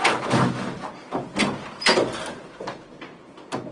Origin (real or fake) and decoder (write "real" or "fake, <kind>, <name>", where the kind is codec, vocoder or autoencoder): real